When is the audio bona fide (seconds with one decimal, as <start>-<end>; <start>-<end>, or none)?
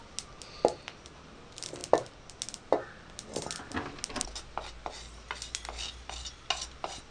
0.0-7.1